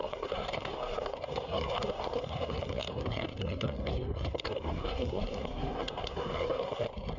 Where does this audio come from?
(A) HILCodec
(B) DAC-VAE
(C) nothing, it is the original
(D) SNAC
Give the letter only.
D